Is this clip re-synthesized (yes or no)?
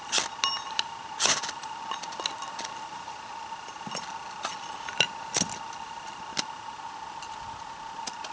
no